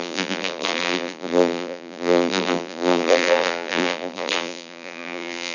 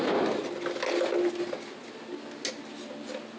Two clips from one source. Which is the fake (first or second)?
first